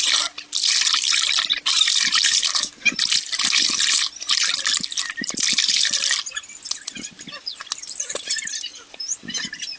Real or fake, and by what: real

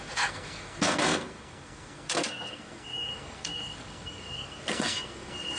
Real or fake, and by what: fake, codec, SNAC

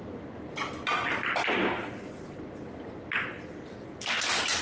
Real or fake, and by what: real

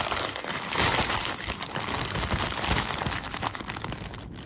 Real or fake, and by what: real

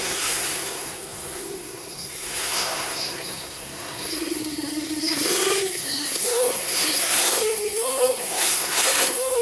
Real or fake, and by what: fake, codec, SNAC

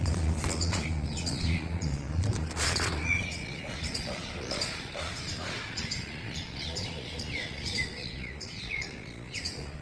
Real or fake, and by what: fake, vocoder, Vocos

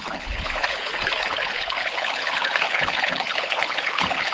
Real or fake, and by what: fake, codec, HILCodec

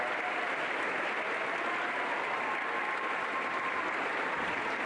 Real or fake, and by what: real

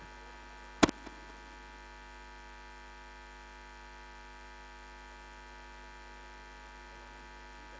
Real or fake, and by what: real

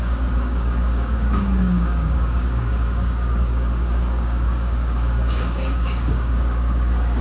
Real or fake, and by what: fake, codec, DAC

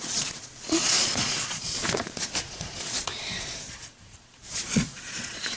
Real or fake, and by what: fake, vocoder, Vocos